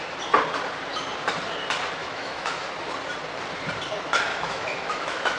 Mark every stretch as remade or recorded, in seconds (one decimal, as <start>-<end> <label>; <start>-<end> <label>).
0.0-2.0 recorded; 2.0-2.7 remade; 2.7-4.3 recorded; 4.3-5.4 remade